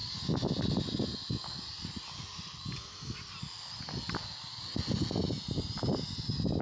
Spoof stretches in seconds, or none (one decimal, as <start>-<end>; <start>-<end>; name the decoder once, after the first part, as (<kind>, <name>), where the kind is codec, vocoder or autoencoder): none